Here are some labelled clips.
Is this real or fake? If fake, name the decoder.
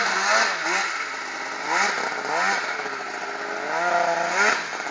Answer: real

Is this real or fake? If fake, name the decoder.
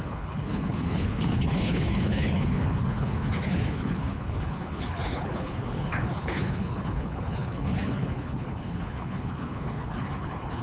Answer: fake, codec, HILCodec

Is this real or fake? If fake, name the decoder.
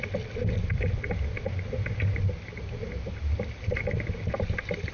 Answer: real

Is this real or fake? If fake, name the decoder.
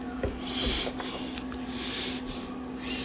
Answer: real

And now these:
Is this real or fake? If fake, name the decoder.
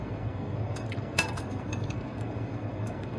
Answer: fake, codec, SNAC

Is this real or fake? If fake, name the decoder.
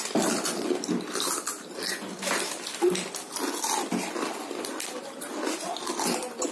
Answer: real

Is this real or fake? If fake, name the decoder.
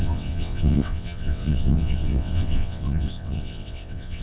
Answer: fake, vocoder, WaveNeXt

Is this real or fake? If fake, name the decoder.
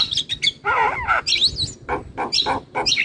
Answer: real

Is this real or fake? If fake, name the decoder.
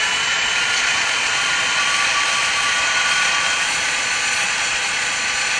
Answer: fake, vocoder, Vocos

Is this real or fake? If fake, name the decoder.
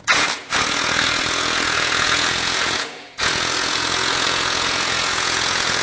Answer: fake, vocoder, Vocos